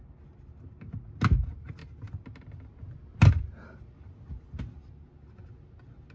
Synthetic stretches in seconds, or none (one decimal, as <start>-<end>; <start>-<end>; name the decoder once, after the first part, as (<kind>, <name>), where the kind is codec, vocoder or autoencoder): none